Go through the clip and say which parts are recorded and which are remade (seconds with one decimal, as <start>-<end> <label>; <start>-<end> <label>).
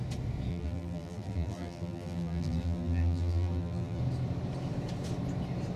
0.0-0.5 recorded; 0.5-4.0 remade; 4.0-5.8 recorded